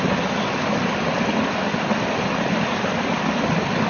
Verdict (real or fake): real